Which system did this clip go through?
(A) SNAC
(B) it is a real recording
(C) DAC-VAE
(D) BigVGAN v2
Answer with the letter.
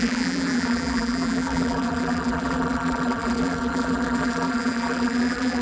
D